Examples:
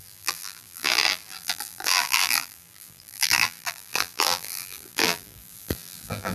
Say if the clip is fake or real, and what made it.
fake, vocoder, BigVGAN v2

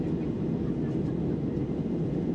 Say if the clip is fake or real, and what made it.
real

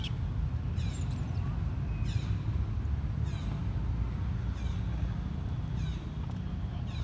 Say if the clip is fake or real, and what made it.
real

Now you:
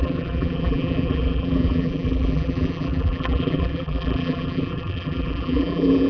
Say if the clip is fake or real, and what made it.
fake, vocoder, BigVGAN v2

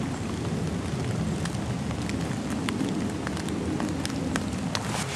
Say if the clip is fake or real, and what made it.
real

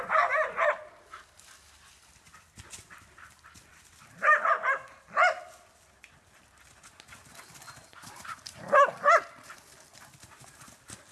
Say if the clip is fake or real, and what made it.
real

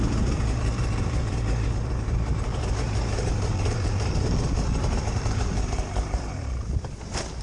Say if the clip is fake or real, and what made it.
fake, vocoder, BigVGAN v2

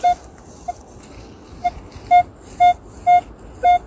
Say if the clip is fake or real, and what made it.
real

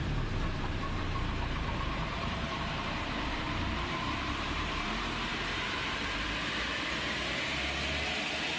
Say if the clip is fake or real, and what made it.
fake, vocoder, BigVGAN v2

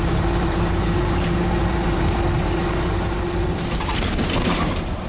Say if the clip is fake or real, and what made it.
fake, vocoder, BigVGAN v2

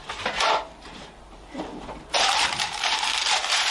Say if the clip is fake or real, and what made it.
fake, vocoder, BigVGAN v2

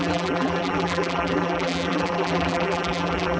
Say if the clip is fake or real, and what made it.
fake, vocoder, BigVGAN v2